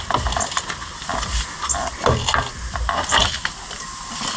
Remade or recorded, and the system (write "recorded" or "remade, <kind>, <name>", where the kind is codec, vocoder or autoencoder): recorded